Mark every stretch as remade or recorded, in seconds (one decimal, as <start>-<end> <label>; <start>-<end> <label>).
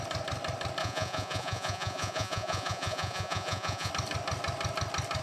0.0-0.8 recorded; 0.8-3.9 remade; 3.9-5.2 recorded